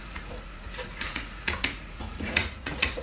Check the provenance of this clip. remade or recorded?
remade